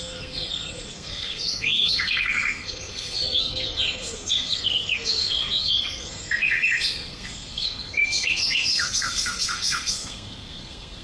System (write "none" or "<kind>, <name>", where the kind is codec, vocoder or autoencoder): codec, SNAC